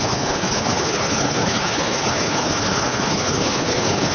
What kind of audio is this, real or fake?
fake